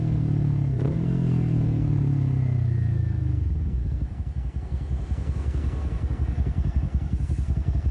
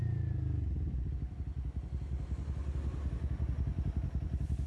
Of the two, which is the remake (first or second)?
first